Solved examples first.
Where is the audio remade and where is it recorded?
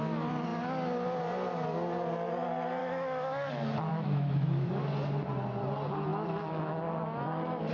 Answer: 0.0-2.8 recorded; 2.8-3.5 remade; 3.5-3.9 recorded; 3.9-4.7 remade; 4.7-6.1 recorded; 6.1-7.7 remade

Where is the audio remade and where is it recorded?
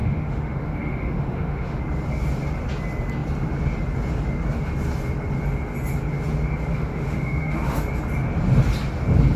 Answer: 0.0-1.8 remade; 1.8-6.7 recorded; 6.7-7.8 remade; 7.8-9.4 recorded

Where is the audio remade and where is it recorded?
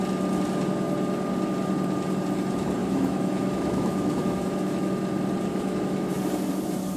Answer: 0.0-2.8 recorded; 2.8-4.9 remade; 4.9-5.5 recorded; 5.5-6.1 remade; 6.1-7.0 recorded